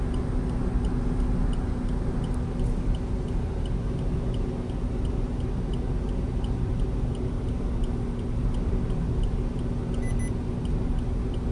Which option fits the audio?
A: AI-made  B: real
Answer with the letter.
B